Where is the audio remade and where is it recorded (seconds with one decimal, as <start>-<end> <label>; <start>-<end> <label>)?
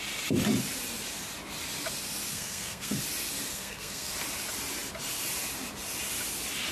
0.0-2.3 recorded; 2.3-3.0 remade; 3.0-3.5 recorded; 3.5-4.1 remade; 4.1-6.7 recorded